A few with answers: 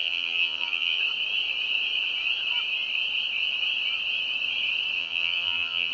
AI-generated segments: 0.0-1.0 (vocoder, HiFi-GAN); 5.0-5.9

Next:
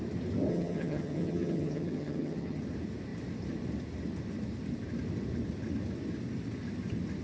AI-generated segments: 0.5-2.6 (vocoder, HiFi-GAN)

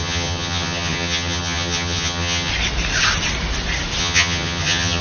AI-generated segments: 0.0-2.5 (vocoder, HiFi-GAN); 4.0-5.0

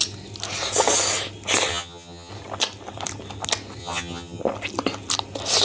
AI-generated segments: 1.7-2.3 (vocoder, HiFi-GAN); 3.8-4.4